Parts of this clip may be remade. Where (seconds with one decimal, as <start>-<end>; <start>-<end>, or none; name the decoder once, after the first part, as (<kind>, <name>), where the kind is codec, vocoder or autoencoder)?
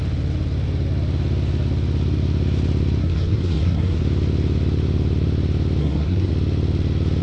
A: 3.0-4.0 (codec, SNAC); 5.8-6.3